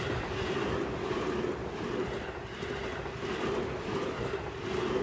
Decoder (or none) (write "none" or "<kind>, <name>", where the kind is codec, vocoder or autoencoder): none